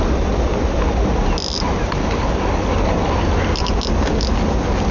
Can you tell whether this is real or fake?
real